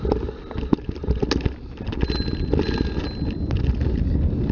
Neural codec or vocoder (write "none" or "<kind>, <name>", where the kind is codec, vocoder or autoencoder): none